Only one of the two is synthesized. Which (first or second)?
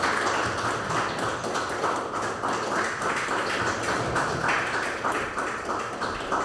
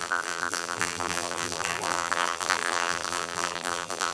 second